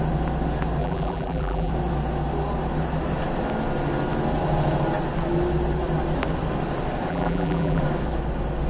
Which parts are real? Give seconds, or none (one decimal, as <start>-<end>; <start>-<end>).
0.0-0.8; 1.7-7.1; 7.8-8.7